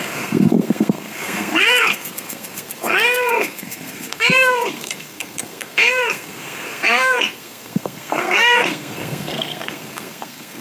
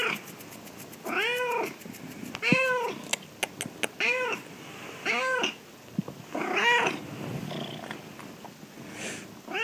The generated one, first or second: first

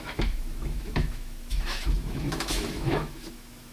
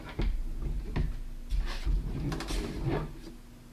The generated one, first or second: first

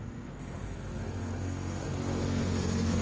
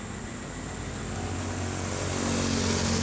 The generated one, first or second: first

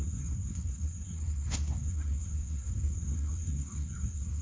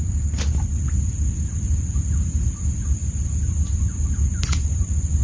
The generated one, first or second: first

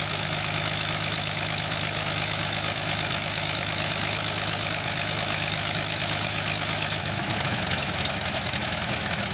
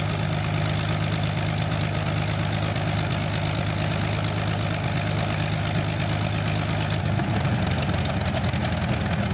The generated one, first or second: first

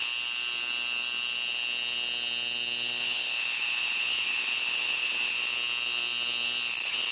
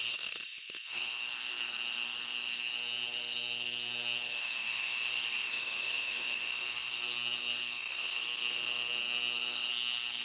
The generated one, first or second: second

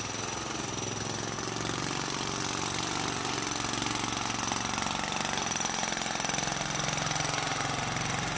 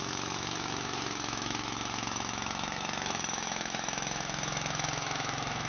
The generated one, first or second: second